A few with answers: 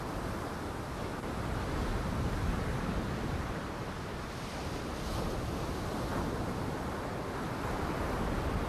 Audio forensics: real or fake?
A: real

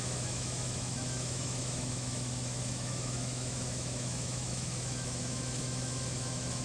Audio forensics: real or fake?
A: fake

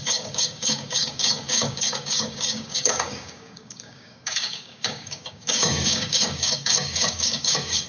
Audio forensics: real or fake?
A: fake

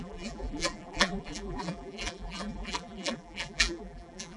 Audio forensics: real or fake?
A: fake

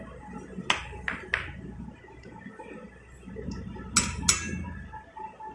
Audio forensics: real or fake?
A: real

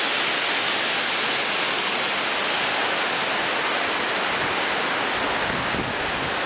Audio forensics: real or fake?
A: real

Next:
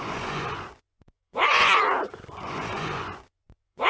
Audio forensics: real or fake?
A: fake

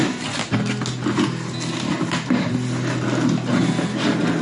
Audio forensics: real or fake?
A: real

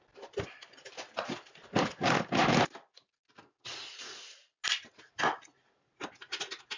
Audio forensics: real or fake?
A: real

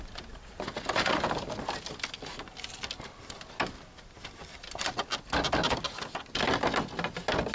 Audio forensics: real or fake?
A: real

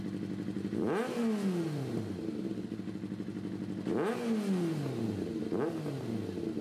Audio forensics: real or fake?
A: real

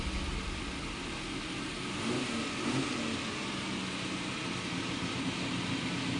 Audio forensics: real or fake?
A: real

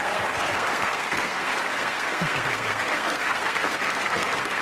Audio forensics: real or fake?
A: fake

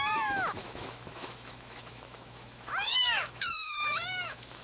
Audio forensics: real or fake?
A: fake